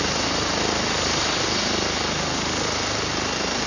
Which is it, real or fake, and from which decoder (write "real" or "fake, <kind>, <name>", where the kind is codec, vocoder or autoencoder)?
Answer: real